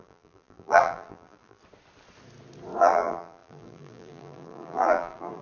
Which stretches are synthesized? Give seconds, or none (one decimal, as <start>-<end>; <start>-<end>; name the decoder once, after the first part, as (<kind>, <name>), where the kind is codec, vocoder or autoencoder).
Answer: 0.0-1.6 (vocoder, BigVGAN v2); 2.8-5.4